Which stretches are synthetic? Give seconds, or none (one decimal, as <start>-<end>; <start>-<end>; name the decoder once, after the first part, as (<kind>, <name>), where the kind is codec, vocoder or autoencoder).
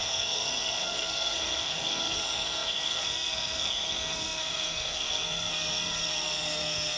0.0-7.0 (codec, SNAC)